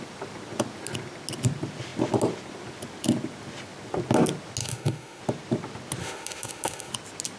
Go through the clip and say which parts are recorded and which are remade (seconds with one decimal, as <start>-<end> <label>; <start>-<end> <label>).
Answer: 0.0-4.6 recorded; 4.6-5.2 remade; 5.2-6.0 recorded; 6.0-6.9 remade; 6.9-7.4 recorded